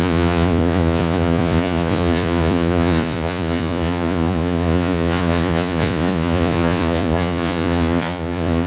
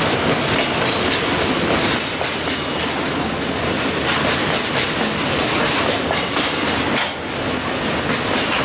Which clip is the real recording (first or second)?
second